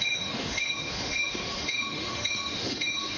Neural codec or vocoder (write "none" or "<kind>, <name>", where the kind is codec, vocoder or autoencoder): autoencoder, DAC-VAE